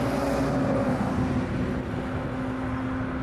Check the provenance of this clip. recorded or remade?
recorded